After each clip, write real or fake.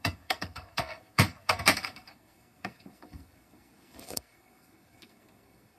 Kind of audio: fake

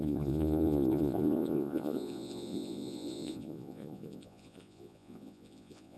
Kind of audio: fake